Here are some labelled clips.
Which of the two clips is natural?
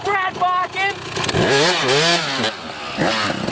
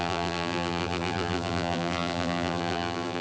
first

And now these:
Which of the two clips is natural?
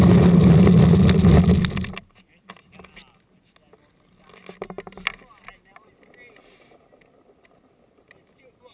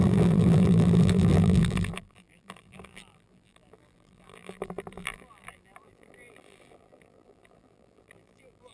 first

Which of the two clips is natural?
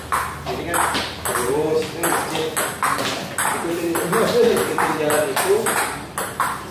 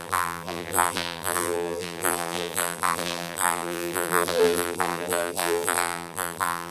first